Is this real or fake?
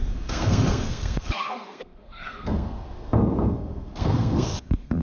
fake